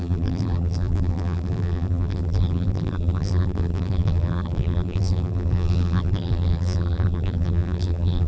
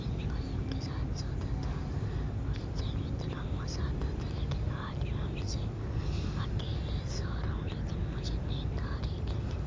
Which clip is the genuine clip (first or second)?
second